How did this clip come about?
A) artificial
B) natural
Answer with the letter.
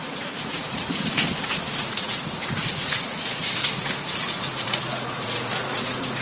A